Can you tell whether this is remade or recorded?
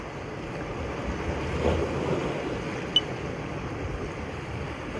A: recorded